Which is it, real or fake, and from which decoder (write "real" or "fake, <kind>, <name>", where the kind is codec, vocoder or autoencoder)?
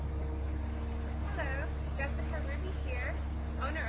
real